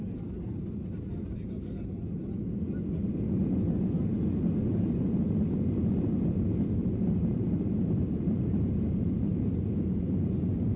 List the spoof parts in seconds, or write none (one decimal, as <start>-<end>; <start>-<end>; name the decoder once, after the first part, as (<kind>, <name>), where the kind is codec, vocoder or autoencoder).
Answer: 6.8-9.7 (vocoder, BigVGAN v2)